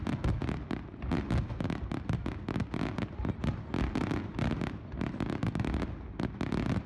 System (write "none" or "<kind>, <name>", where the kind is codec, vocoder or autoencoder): none